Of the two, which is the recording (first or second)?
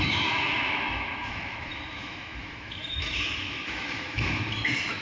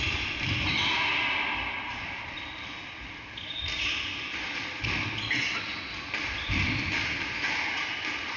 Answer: second